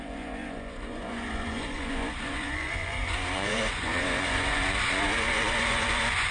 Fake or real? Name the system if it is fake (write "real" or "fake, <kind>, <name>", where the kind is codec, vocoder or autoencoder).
fake, vocoder, Vocos